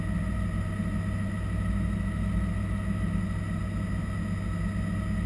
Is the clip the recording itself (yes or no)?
yes